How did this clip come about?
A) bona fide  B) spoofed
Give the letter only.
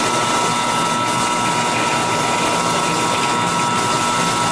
A